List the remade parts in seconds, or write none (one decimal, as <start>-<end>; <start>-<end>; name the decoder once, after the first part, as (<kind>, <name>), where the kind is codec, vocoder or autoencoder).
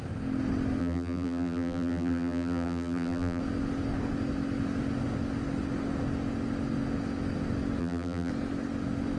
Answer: 0.8-3.4 (vocoder, BigVGAN v2); 7.8-8.3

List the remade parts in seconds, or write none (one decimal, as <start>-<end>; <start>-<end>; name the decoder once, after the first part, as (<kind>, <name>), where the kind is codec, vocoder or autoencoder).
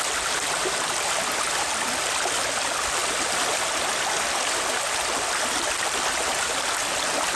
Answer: none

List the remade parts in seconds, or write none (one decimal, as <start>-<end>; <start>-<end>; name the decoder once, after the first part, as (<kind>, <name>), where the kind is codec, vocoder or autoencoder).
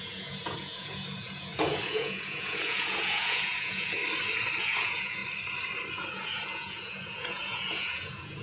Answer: 0.0-4.0 (vocoder, Vocos); 4.6-5.2; 5.9-8.4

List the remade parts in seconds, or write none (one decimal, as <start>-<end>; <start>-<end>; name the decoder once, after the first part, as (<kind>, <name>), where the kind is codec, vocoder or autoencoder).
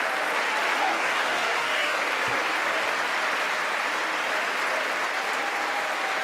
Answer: 0.8-2.0 (codec, DAC)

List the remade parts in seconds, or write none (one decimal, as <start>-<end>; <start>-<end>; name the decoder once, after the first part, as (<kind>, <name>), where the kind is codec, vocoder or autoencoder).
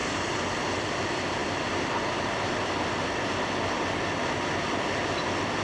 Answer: none